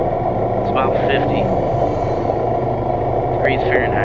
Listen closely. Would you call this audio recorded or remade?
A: recorded